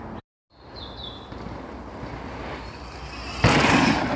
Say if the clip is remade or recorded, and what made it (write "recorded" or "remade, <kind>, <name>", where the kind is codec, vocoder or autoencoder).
recorded